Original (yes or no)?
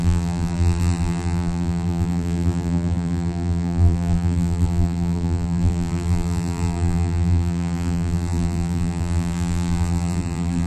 no